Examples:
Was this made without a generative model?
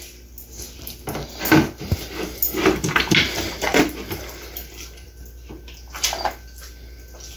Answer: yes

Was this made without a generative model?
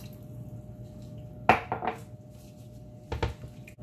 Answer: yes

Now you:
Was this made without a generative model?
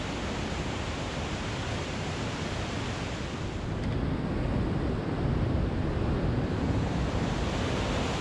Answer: yes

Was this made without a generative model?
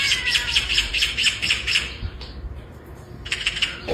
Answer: no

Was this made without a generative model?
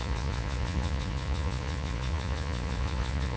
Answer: no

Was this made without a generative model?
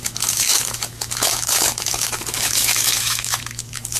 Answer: no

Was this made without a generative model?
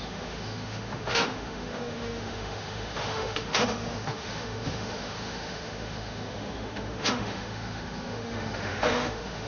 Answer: no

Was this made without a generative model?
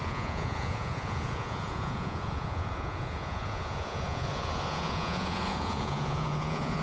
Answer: no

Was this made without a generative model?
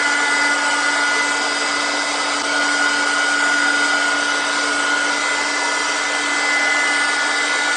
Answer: yes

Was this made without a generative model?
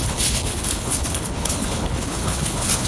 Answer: no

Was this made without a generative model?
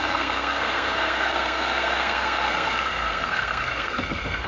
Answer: no